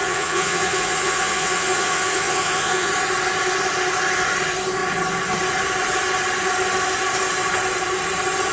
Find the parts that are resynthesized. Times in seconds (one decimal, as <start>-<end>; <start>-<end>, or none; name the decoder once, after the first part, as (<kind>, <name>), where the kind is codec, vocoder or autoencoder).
0.0-2.9 (vocoder, Vocos)